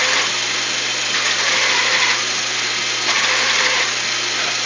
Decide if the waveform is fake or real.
real